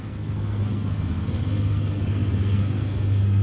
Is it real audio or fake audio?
fake